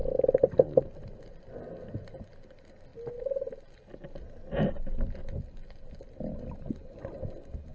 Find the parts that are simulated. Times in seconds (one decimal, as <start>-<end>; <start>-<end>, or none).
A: none

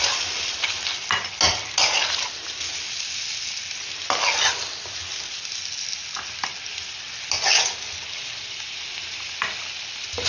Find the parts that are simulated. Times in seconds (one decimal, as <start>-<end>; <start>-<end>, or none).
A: none

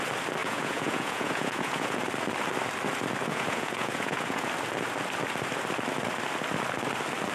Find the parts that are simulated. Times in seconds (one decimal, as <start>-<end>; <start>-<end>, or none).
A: 0.4-2.0; 3.3-4.5

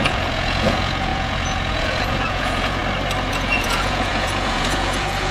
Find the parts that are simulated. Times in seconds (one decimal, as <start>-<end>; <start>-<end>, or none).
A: 0.0-2.8; 3.3-5.3

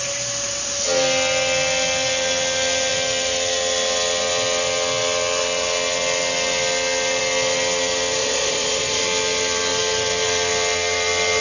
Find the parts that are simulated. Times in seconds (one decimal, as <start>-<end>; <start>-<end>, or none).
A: 8.2-9.0

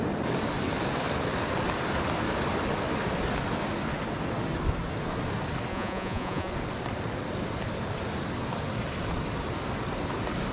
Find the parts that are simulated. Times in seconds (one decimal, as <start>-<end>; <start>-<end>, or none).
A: 5.7-6.5